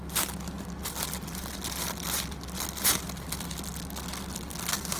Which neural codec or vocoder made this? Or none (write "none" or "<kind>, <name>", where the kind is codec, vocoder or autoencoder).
none